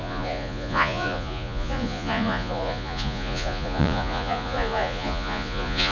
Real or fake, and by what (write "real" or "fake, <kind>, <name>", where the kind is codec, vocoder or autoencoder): fake, vocoder, Vocos